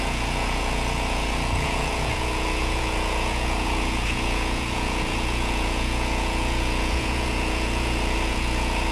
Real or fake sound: fake